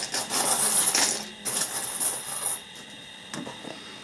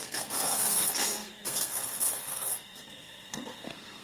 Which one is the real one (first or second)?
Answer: first